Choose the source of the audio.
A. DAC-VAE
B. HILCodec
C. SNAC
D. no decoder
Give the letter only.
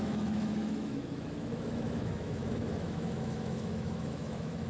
A